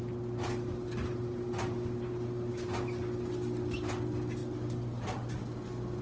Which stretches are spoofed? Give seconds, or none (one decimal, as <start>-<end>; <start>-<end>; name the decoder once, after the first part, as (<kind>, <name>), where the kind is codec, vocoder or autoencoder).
none